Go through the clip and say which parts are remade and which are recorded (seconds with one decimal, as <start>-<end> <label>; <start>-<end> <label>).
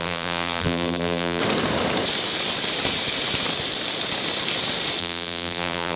0.0-1.4 remade; 1.4-5.0 recorded; 5.0-6.0 remade